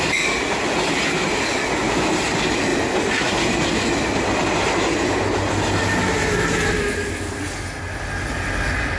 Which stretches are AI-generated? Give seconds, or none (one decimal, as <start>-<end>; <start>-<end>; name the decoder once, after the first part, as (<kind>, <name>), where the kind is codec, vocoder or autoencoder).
none